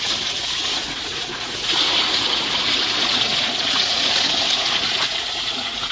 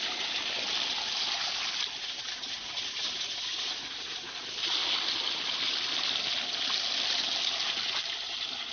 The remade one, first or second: first